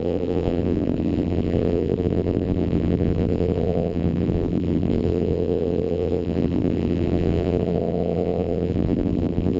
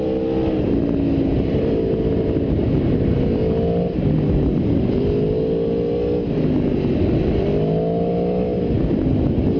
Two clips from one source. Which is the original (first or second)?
second